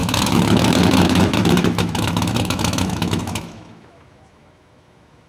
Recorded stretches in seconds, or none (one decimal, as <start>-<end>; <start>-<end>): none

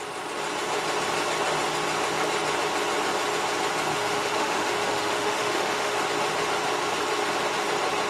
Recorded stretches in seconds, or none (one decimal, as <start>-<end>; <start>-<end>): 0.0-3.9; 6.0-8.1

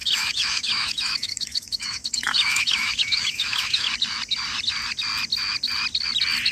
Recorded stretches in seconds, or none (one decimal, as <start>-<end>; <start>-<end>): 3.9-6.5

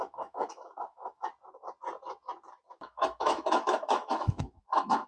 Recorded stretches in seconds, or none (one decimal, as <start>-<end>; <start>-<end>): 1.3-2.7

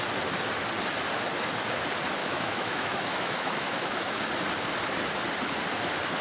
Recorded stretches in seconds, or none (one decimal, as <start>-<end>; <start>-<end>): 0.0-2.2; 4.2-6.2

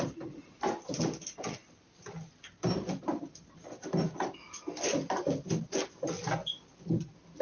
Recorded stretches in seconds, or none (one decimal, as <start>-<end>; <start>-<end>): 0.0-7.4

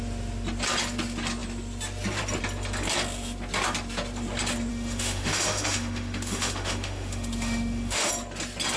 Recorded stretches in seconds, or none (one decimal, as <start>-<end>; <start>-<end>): 0.0-4.7; 8.1-8.8